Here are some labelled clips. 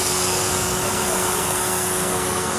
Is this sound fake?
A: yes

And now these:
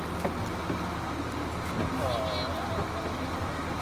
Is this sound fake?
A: no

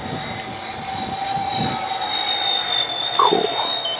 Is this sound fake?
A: no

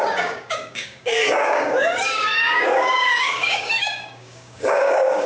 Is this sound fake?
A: yes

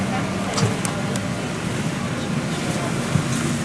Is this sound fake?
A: no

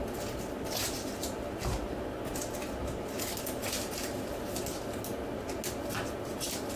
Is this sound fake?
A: no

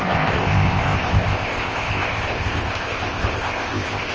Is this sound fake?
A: yes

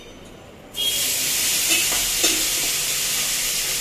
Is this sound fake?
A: no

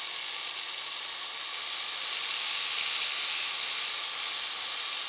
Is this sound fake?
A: no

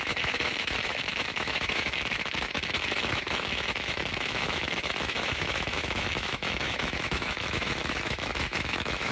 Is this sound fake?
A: yes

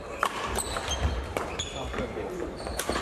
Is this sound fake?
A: no